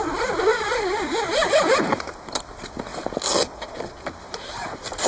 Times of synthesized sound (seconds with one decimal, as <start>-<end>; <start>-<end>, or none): 0.5-2.5